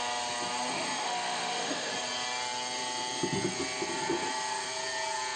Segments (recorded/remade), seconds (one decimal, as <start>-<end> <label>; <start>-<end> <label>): 0.0-0.7 recorded; 0.7-1.9 remade; 1.9-5.4 recorded